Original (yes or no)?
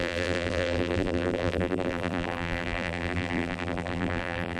no